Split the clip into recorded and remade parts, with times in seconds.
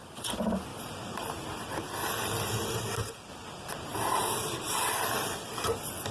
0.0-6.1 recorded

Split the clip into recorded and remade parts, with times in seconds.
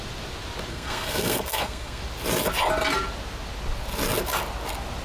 0.0-0.7 recorded; 0.7-2.0 remade; 2.0-5.0 recorded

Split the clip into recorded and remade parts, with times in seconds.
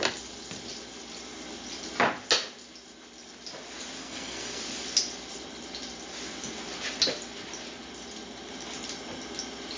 0.0-4.0 recorded; 4.0-4.6 remade; 4.6-9.8 recorded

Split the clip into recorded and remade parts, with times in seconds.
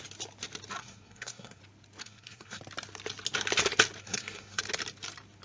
0.0-0.8 recorded; 0.8-1.6 remade; 1.6-2.0 recorded; 2.0-2.6 remade; 2.6-4.0 recorded; 4.0-4.6 remade; 4.6-5.4 recorded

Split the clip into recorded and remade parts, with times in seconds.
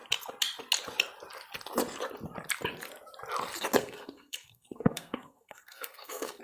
0.0-3.8 recorded; 3.8-6.4 remade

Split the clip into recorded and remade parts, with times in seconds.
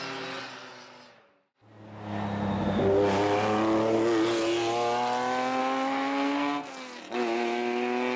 0.0-5.6 recorded; 5.6-7.0 remade; 7.0-8.2 recorded